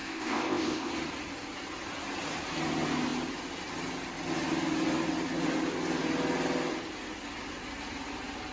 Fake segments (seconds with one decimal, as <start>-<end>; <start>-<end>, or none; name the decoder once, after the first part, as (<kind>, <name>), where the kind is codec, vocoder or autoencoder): 0.0-0.9 (codec, ZipCodec)